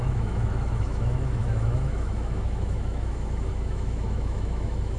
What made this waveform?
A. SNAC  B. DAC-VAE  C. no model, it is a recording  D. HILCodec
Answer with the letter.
B